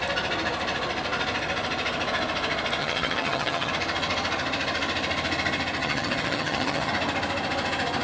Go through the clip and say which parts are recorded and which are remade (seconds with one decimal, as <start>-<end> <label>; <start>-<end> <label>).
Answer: 0.0-2.8 recorded; 2.8-3.7 remade; 3.7-5.8 recorded; 5.8-6.9 remade; 6.9-8.0 recorded